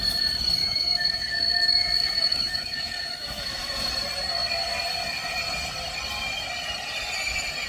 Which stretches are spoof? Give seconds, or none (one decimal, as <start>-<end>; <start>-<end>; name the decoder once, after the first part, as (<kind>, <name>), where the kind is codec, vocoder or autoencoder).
0.6-3.9 (autoencoder, DAC-VAE)